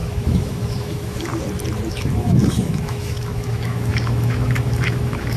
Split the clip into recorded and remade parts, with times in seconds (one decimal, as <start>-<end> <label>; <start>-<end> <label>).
0.0-1.3 remade; 1.3-1.9 recorded; 1.9-5.4 remade